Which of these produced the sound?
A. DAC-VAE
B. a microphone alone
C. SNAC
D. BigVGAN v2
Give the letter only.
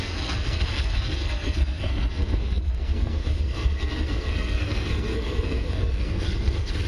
C